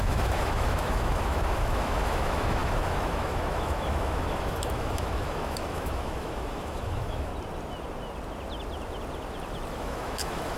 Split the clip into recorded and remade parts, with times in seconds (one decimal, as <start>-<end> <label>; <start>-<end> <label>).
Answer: 0.0-7.3 remade; 7.3-9.7 recorded; 9.7-10.6 remade